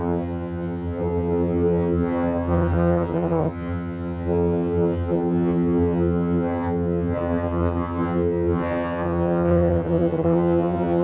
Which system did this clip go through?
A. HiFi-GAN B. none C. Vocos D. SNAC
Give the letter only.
A